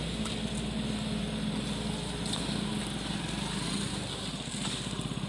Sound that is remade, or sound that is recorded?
recorded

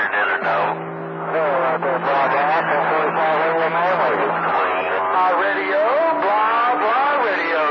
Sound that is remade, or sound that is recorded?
recorded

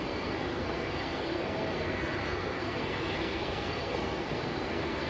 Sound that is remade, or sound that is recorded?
remade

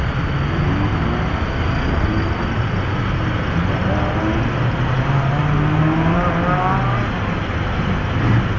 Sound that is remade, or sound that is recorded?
recorded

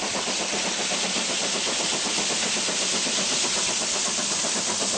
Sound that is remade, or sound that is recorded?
recorded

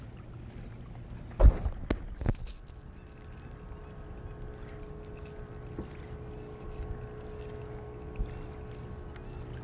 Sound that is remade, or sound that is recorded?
recorded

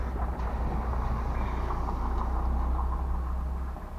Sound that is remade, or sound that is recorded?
recorded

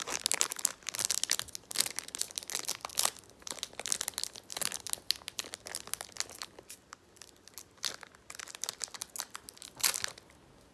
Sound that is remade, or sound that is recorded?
recorded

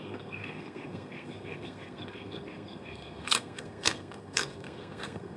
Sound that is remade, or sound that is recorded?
remade